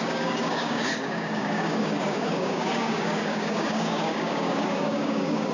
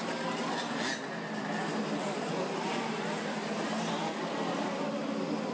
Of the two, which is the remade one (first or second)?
first